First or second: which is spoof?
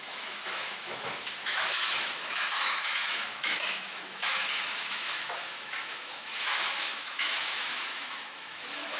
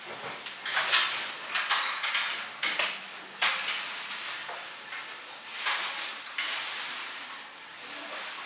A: first